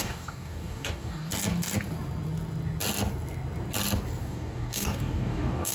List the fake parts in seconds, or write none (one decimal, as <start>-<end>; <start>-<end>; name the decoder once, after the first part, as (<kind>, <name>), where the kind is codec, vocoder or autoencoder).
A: 0.0-1.3 (codec, DAC); 4.2-5.7